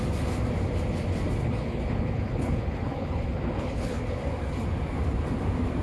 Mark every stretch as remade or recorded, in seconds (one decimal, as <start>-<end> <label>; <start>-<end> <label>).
0.0-1.4 recorded; 1.4-4.0 remade; 4.0-5.8 recorded